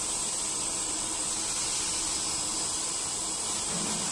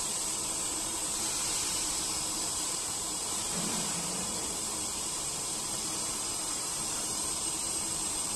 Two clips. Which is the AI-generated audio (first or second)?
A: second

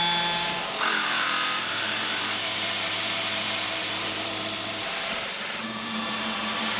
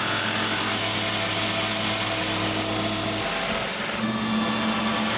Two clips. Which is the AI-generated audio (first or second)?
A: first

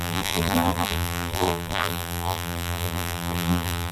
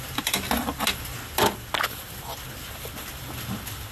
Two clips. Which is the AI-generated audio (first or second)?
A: first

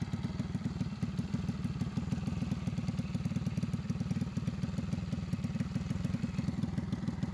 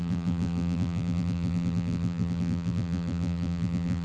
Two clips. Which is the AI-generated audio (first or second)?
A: second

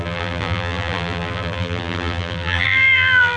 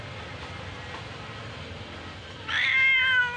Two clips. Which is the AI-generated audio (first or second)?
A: first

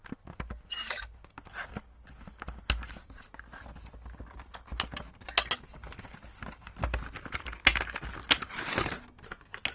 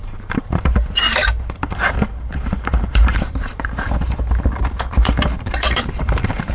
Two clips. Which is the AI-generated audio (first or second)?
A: second